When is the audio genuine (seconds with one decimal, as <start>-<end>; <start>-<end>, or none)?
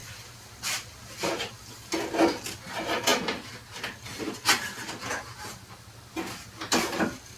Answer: 2.0-7.4